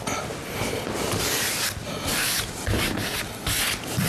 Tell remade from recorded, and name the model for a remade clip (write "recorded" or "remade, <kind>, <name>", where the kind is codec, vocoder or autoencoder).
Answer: recorded